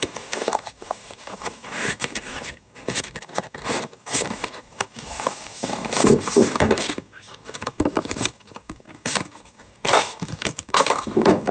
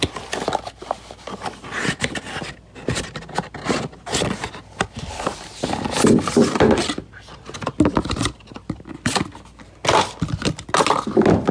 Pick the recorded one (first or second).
second